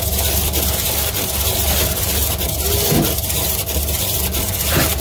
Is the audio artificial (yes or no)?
no